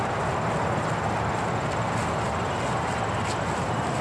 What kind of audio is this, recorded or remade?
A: recorded